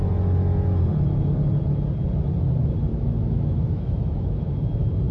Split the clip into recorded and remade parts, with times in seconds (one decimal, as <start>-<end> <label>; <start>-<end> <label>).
0.0-2.9 recorded; 2.9-4.6 remade; 4.6-5.1 recorded